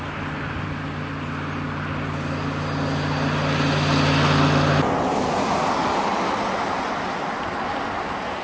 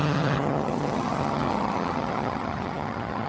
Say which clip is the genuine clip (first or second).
first